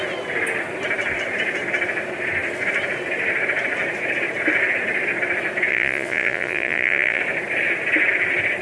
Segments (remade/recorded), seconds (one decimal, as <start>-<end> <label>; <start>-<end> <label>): 0.0-5.7 recorded; 5.7-7.2 remade; 7.2-8.6 recorded

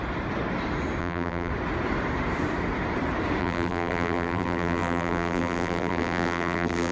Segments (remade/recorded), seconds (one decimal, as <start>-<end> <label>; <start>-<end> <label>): 0.0-1.0 recorded; 1.0-1.5 remade; 1.5-3.4 recorded; 3.4-6.9 remade

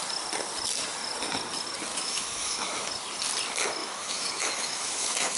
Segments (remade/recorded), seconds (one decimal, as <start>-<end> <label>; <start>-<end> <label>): 0.0-1.9 recorded; 1.9-2.9 remade; 2.9-3.8 recorded; 3.8-5.4 remade

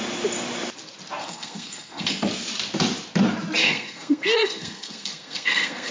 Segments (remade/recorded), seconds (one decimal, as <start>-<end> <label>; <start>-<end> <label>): 0.0-1.2 recorded; 1.2-2.2 remade; 2.2-3.6 recorded; 3.6-5.9 remade

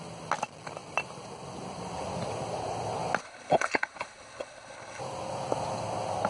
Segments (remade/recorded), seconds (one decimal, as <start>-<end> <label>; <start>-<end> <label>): 0.0-3.2 recorded; 3.2-5.0 remade; 5.0-6.3 recorded

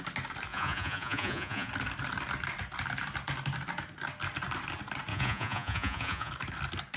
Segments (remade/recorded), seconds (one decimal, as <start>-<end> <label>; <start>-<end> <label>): 0.0-0.5 recorded; 0.5-1.7 remade; 1.7-5.1 recorded; 5.1-6.3 remade; 6.3-7.0 recorded

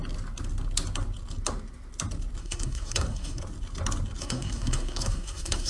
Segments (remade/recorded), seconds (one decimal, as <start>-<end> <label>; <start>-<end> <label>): 0.0-2.4 recorded; 2.4-3.4 remade; 3.4-4.2 recorded; 4.2-5.7 remade